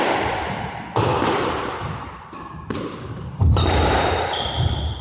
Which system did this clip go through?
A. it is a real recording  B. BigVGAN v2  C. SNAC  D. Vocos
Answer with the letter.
B